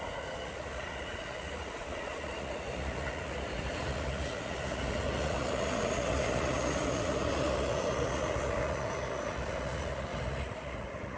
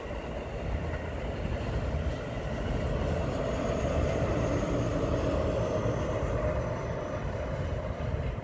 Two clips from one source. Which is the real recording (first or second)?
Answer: second